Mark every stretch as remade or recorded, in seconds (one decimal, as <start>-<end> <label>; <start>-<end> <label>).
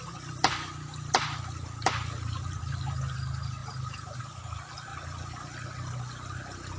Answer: 0.0-4.9 remade; 4.9-6.8 recorded